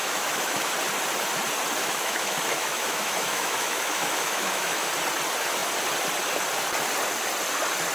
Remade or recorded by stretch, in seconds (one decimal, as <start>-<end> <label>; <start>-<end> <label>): 0.0-0.7 remade; 0.7-1.8 recorded; 1.8-4.9 remade; 4.9-7.9 recorded